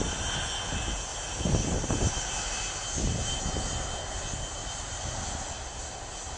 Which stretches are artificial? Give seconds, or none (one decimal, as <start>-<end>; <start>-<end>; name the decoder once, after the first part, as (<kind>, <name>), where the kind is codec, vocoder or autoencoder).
1.1-2.6 (vocoder, BigVGAN v2); 4.6-5.8